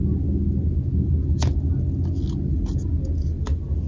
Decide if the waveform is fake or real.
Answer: real